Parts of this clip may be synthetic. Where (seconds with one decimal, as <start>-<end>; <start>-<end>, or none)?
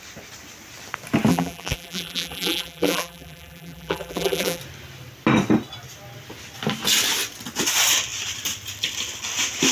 1.3-4.6